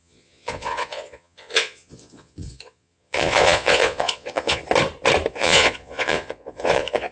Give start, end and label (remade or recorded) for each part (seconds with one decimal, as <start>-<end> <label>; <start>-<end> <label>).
0.0-4.6 remade; 4.6-5.3 recorded; 5.3-7.1 remade